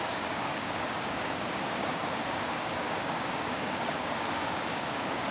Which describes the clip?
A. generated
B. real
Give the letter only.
A